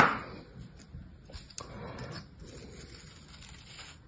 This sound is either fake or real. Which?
real